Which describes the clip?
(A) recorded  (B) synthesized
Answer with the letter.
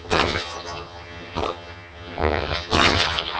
B